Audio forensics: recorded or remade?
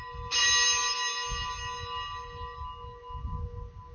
recorded